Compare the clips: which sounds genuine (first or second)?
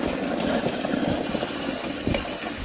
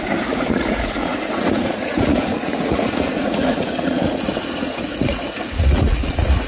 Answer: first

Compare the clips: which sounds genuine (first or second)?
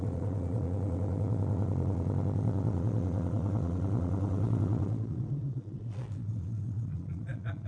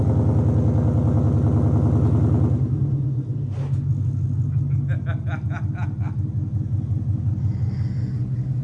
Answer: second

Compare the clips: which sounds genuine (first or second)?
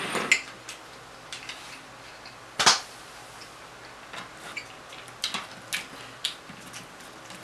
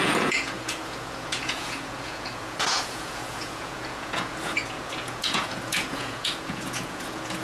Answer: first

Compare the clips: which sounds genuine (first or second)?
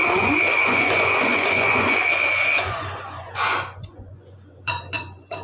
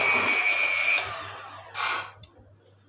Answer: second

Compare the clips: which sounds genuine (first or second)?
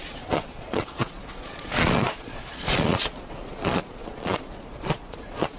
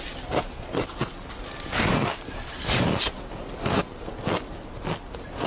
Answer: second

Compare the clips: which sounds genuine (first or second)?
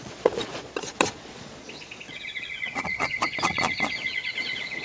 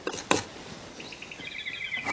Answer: second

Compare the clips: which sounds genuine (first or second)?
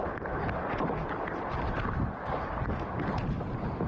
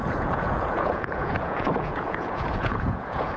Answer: first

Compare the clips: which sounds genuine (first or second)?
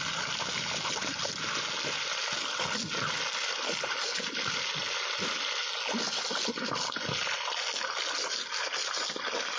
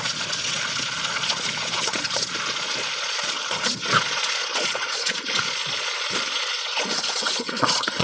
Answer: first